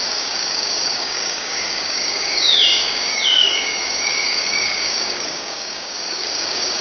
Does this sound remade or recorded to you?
remade